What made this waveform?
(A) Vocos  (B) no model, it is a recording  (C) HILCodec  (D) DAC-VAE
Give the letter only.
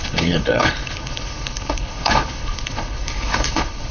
C